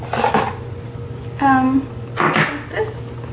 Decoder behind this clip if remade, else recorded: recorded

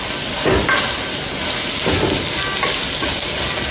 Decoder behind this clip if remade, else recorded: recorded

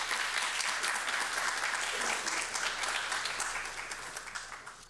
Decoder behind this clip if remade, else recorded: recorded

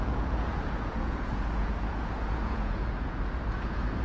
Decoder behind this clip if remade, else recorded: remade, vocoder, Vocos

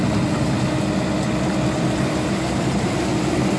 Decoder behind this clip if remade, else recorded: recorded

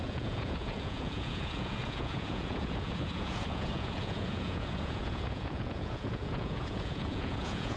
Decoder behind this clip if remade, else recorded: remade, vocoder, Vocos